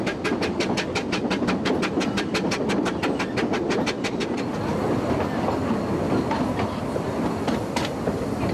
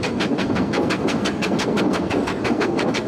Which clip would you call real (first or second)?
first